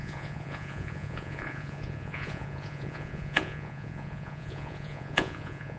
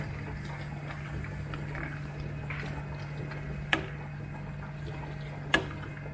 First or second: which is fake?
first